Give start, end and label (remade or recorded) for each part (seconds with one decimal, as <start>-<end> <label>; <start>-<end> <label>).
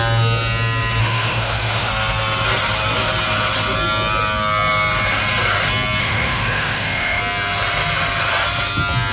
0.0-1.0 recorded; 1.0-1.9 remade; 1.9-6.0 recorded; 6.0-7.2 remade; 7.2-9.1 recorded